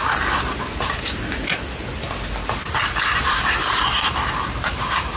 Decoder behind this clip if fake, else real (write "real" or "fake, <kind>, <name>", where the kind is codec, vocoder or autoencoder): real